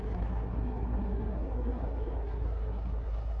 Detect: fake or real fake